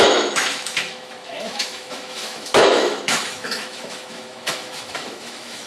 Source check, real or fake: fake